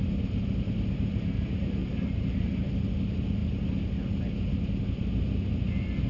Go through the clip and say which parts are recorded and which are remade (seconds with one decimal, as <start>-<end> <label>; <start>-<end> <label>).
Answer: 0.0-1.8 recorded; 1.8-2.6 remade; 2.6-6.1 recorded